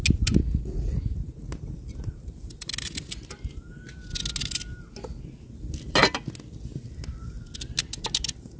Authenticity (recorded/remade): recorded